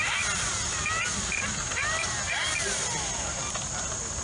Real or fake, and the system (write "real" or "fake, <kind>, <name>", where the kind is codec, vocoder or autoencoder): real